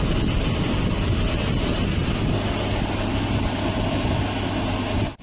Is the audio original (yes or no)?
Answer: yes